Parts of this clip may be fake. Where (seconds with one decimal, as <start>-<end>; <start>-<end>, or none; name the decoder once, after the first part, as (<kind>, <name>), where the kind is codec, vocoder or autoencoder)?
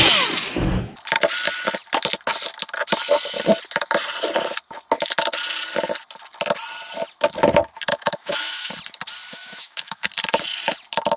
7.9-8.7 (autoencoder, DAC-VAE); 9.3-10.1